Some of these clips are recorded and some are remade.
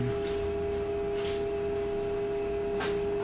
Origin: recorded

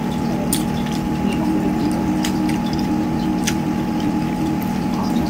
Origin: recorded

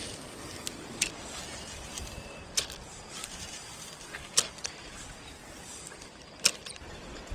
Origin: recorded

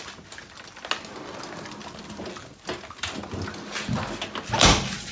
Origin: recorded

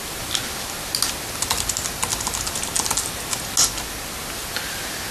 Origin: recorded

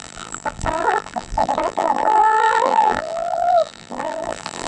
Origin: remade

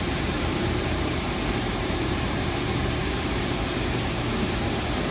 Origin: remade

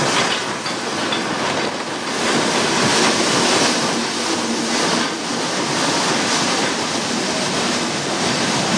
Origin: recorded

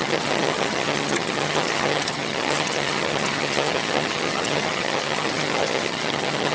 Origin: remade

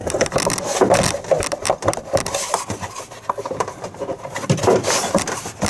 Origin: recorded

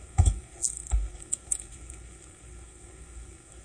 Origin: remade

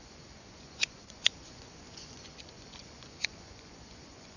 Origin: remade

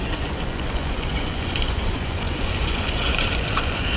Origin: remade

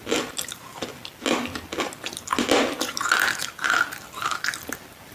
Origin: recorded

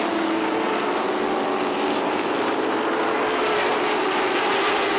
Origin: recorded